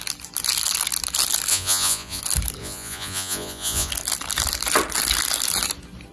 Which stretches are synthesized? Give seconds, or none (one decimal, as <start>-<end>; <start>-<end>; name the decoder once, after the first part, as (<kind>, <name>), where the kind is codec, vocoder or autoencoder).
1.5-2.2 (vocoder, Vocos); 2.6-3.9